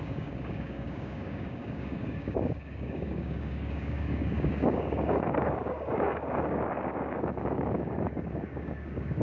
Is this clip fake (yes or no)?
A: yes